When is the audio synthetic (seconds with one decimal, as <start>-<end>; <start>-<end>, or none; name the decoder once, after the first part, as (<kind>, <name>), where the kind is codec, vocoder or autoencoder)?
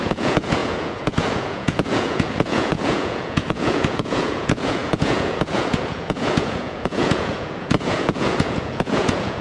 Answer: 0.0-9.4 (vocoder, Vocos)